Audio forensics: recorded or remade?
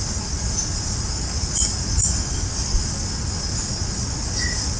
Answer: recorded